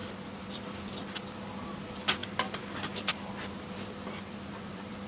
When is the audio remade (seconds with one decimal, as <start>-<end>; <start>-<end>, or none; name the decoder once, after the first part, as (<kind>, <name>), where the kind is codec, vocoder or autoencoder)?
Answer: none